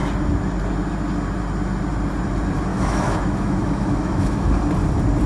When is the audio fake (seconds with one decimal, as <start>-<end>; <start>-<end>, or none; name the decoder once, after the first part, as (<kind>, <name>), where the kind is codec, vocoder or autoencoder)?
2.7-4.5 (autoencoder, DAC-VAE)